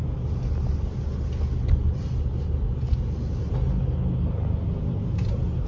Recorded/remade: recorded